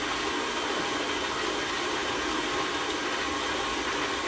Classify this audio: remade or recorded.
recorded